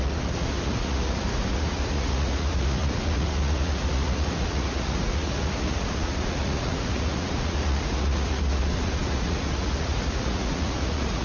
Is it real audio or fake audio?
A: fake